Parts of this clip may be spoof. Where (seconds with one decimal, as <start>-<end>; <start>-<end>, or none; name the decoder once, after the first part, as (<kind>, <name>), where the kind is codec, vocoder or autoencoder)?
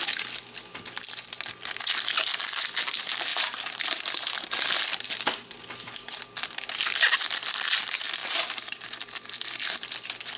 3.3-4.4 (vocoder, BigVGAN v2); 8.2-9.3